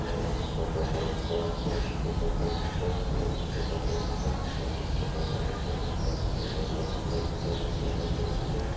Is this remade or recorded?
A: recorded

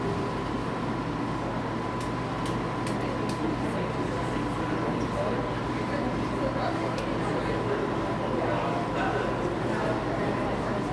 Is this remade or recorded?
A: recorded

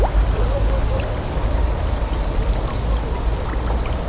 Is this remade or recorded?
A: recorded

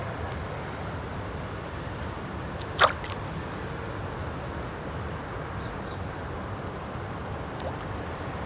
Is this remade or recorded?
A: recorded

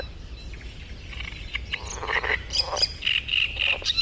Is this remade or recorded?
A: recorded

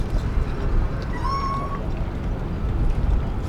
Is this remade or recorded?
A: remade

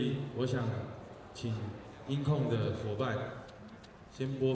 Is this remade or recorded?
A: recorded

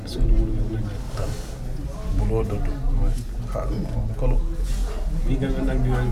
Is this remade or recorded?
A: recorded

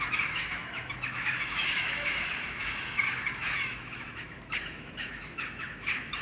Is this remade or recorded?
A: remade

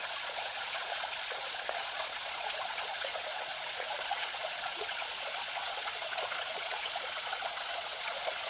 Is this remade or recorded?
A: remade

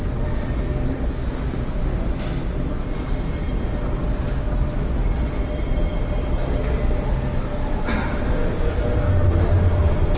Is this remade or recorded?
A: recorded